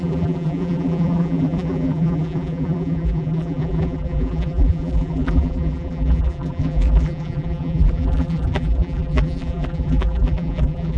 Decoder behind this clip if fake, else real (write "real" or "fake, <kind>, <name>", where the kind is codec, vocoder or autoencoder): fake, vocoder, BigVGAN v2